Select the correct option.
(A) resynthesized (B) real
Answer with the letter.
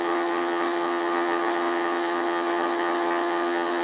A